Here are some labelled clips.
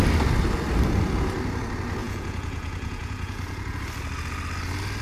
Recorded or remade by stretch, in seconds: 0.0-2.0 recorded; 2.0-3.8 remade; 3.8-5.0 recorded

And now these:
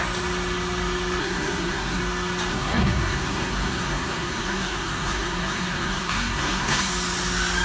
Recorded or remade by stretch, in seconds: 0.0-1.2 recorded; 1.2-2.0 remade; 2.0-2.5 recorded; 2.5-6.9 remade; 6.9-7.6 recorded